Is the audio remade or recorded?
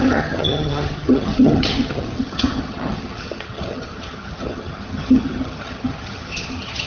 remade